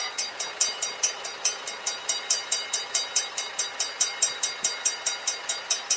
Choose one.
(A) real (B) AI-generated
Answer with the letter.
B